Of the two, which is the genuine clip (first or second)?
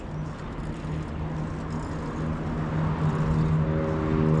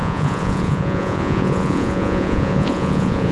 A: first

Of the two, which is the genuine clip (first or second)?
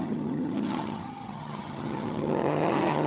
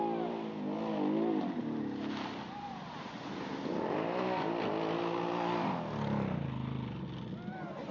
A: second